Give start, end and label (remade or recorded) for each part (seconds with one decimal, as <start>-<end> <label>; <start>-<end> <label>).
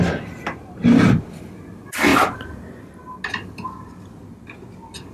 0.0-0.6 recorded; 0.6-1.5 remade; 1.5-5.1 recorded